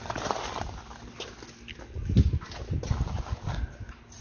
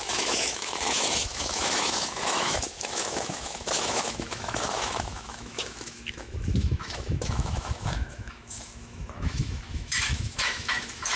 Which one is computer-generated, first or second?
second